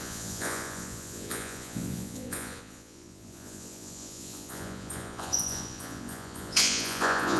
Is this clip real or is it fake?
fake